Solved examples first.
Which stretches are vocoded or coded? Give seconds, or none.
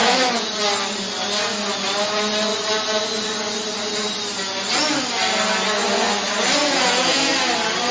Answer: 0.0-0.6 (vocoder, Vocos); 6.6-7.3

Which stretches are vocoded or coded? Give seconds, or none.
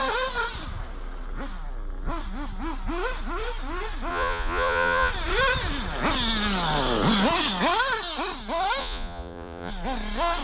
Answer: 4.1-5.1 (vocoder, Vocos); 8.8-9.7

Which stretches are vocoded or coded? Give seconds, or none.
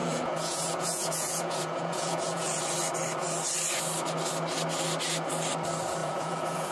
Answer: 0.0-2.6 (vocoder, Vocos); 6.0-6.7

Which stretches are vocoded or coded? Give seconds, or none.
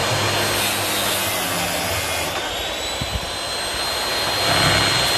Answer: none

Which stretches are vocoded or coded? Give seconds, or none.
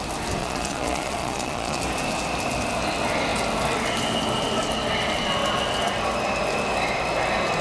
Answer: 0.4-1.8 (vocoder, Vocos)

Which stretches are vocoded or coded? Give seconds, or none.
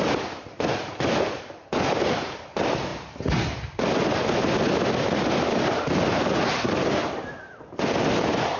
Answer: none